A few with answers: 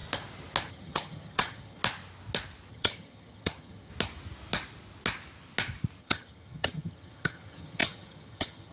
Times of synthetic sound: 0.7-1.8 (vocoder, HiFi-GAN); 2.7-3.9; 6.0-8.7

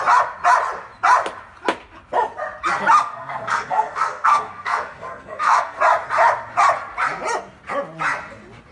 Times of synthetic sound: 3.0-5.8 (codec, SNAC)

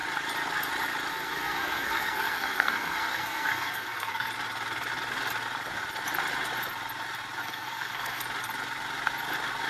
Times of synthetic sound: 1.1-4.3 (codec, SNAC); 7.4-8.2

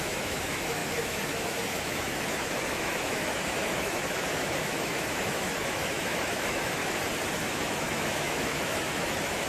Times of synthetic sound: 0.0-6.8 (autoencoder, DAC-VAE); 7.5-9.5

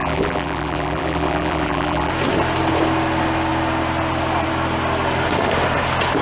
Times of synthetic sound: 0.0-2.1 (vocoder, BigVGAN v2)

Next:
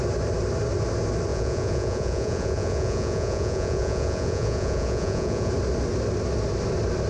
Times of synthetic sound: 1.3-5.5 (vocoder, Vocos)

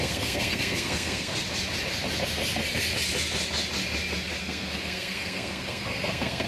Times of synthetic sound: 0.0-1.3 (codec, SNAC); 4.4-6.5

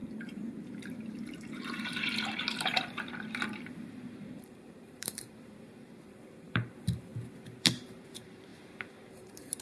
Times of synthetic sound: 0.0-7.1 (vocoder, BigVGAN v2); 7.6-9.6